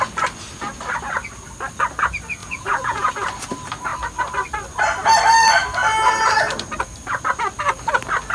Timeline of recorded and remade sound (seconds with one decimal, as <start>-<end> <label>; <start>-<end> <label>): 0.0-2.4 recorded; 2.4-3.1 remade; 3.1-8.3 recorded